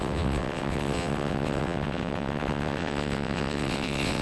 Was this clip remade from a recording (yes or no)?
yes